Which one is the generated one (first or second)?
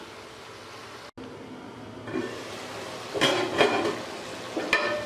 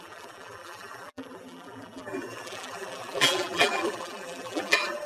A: second